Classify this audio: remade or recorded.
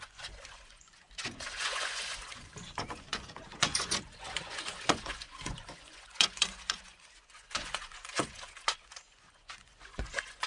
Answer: remade